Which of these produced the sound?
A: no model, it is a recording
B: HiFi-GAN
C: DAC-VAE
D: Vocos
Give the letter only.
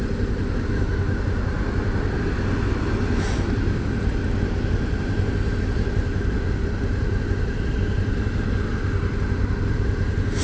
A